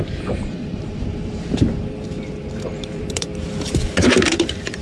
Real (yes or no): no